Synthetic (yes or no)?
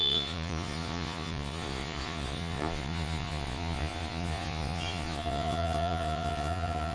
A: yes